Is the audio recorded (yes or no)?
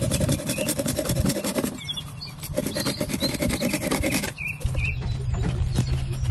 yes